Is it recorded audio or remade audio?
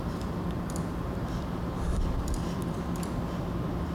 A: remade